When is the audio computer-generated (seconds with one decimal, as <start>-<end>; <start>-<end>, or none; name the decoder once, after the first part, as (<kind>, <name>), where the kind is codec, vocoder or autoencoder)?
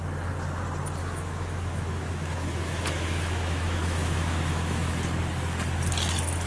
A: 1.0-4.9 (autoencoder, DAC-VAE)